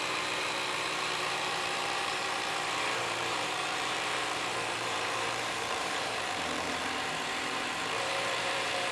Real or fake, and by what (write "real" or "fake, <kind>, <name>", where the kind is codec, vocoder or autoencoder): fake, vocoder, BigVGAN v2